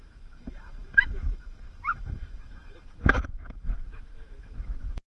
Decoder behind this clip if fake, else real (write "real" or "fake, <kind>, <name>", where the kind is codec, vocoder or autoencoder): fake, autoencoder, DAC-VAE